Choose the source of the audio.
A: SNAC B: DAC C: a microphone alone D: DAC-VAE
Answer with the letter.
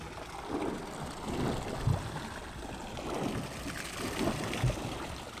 C